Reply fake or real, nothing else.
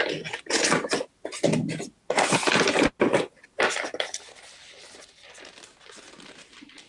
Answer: real